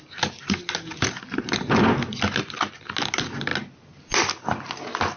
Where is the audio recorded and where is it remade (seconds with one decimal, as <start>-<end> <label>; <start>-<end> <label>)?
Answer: 0.0-5.2 recorded